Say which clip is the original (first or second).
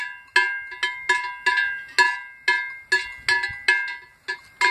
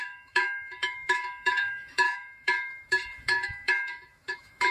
first